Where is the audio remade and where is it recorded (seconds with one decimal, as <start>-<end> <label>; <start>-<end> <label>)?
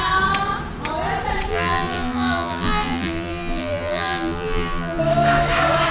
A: 0.0-1.5 recorded; 1.5-5.0 remade; 5.0-5.9 recorded